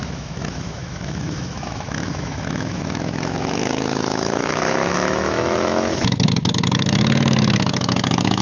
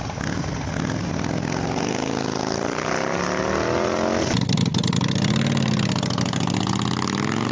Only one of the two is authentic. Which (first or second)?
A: second